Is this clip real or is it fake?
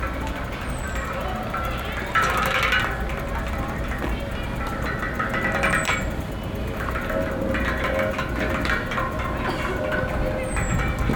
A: real